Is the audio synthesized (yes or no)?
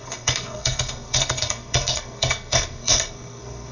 yes